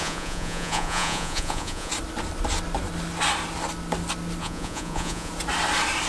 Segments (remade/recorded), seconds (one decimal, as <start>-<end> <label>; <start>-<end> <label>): 0.0-1.9 remade; 1.9-4.4 recorded; 4.4-5.3 remade; 5.3-6.1 recorded